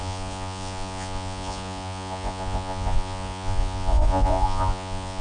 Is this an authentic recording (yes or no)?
no